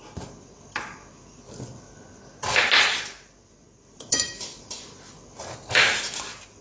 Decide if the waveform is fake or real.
real